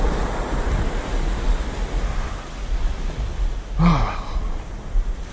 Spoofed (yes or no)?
no